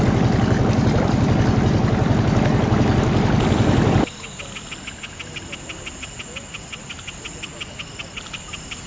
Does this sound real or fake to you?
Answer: real